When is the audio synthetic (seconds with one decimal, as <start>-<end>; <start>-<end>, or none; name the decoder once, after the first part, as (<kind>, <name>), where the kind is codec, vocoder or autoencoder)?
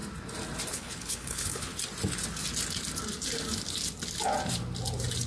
0.7-1.7 (codec, HILCodec)